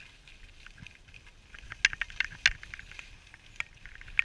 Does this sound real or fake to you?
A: real